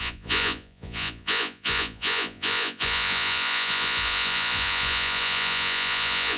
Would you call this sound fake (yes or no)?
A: yes